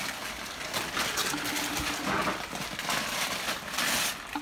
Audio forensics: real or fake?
real